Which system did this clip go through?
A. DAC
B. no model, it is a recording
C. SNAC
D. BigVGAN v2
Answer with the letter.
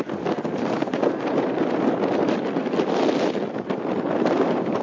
B